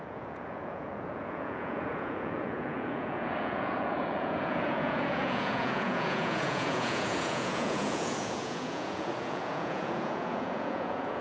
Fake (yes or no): yes